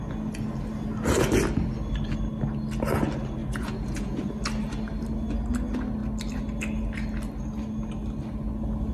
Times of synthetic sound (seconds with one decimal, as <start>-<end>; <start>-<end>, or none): 3.4-4.2